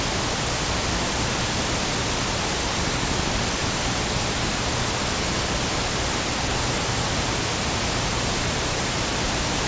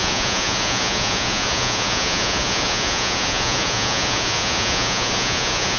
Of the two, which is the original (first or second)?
first